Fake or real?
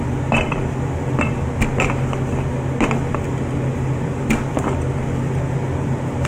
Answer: real